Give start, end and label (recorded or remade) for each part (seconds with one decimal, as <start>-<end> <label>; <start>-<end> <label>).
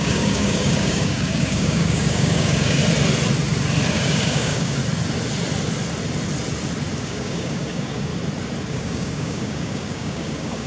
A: 0.0-2.8 remade; 2.8-3.9 recorded; 3.9-4.8 remade; 4.8-7.0 recorded; 7.0-8.1 remade; 8.1-8.7 recorded; 8.7-10.7 remade